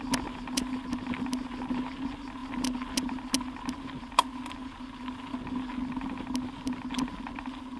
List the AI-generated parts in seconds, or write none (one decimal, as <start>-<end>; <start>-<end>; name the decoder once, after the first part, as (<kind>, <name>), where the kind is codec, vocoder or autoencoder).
none